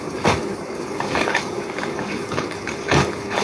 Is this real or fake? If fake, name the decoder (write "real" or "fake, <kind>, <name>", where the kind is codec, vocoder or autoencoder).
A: fake, codec, DAC